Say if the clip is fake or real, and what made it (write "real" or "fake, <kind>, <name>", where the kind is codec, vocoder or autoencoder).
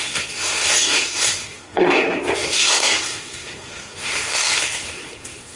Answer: fake, codec, SNAC